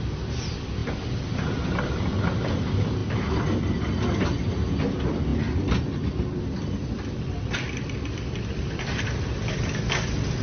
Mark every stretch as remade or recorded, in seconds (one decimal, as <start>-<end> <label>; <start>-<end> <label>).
0.0-10.4 recorded